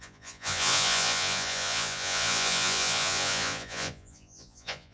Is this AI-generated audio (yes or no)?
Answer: yes